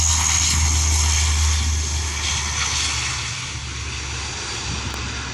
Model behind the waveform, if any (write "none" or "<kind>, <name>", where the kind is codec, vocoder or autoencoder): none